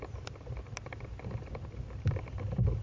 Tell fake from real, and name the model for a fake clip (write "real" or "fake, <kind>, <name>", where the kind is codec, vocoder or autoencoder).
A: real